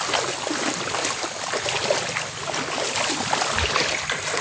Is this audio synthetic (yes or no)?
no